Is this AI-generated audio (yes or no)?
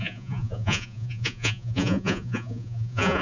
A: yes